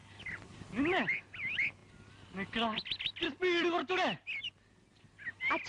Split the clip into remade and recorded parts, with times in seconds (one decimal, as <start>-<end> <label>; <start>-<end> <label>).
0.0-5.7 recorded

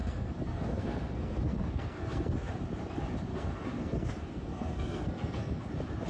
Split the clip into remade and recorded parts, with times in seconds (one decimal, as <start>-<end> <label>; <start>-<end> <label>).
0.0-2.5 remade; 2.5-3.3 recorded; 3.3-5.6 remade; 5.6-6.1 recorded

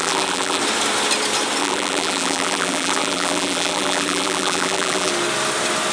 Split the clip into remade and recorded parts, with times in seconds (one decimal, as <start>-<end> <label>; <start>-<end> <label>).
0.0-0.6 remade; 0.6-1.6 recorded; 1.6-5.1 remade; 5.1-5.9 recorded

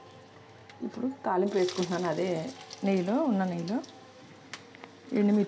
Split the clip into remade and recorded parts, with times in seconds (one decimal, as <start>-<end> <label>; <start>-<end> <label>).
0.0-0.6 remade; 0.6-3.8 recorded; 3.8-4.3 remade; 4.3-5.5 recorded